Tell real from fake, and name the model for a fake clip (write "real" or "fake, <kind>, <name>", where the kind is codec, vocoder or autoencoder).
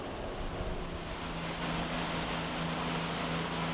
real